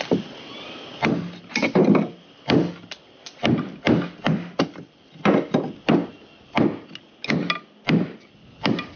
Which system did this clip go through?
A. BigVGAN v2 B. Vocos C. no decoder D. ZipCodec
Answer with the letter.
C